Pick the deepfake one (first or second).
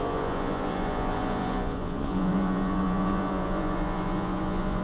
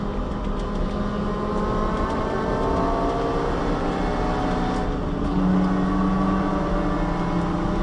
first